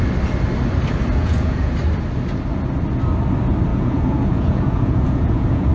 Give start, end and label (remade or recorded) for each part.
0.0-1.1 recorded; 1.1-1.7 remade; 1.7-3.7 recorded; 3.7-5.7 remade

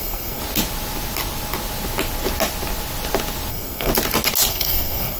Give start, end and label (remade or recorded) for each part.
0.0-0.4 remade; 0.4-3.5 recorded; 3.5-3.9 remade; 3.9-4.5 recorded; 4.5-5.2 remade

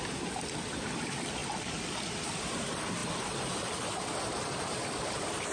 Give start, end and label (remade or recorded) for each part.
0.0-3.0 remade; 3.0-4.8 recorded; 4.8-5.5 remade

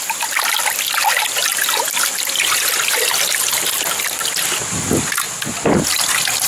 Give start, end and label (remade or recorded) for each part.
0.0-6.5 recorded

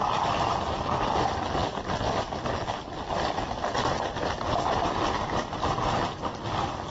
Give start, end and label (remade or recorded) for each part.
0.0-6.9 recorded

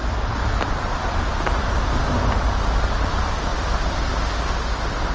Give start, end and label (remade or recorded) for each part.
0.0-3.1 remade; 3.1-5.1 recorded

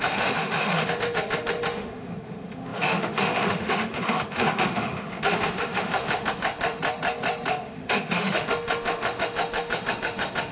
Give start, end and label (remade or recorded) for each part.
0.0-6.8 remade; 6.8-7.5 recorded; 7.5-10.5 remade